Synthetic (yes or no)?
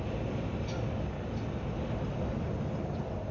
no